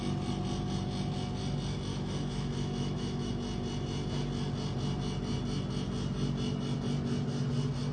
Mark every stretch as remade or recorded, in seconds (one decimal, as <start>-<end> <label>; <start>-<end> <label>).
0.0-1.9 recorded; 1.9-3.3 remade; 3.3-7.9 recorded